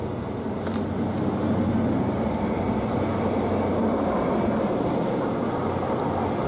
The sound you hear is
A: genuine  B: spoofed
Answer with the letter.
A